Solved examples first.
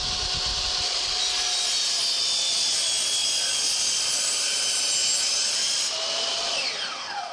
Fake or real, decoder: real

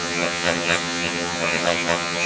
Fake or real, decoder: fake, vocoder, HiFi-GAN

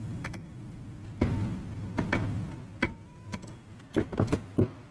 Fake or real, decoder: real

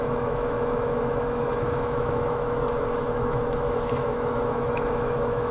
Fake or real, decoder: fake, autoencoder, DAC-VAE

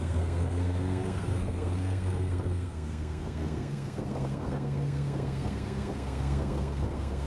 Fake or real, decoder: fake, codec, SNAC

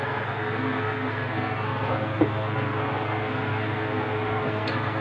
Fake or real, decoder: fake, codec, SNAC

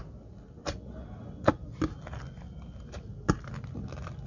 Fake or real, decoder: real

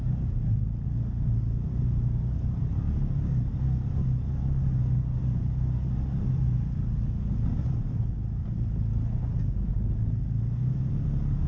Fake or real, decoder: real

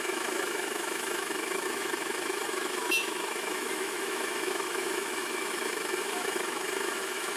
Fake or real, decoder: fake, autoencoder, DAC-VAE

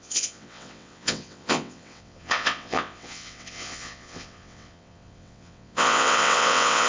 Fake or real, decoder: fake, vocoder, WaveNeXt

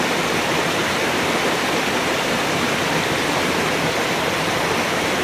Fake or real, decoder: real